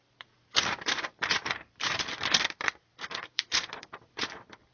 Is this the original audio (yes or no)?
no